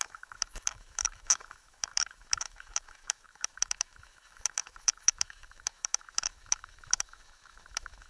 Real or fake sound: fake